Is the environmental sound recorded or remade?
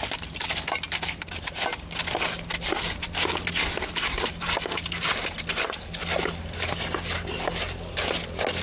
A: recorded